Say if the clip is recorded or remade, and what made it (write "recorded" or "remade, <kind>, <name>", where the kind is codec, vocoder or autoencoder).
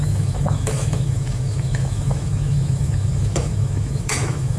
remade, autoencoder, DAC-VAE